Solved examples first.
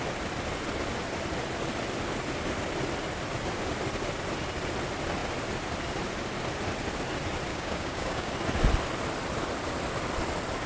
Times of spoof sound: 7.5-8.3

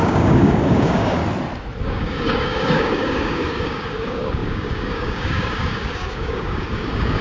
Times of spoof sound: 0.0-1.2; 1.8-7.2

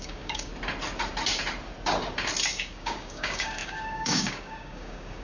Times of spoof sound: 0.0-0.5; 2.5-5.2